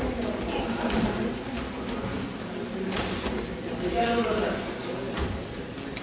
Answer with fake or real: real